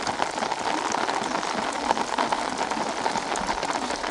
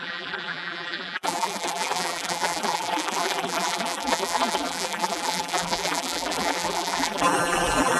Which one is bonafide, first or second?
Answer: first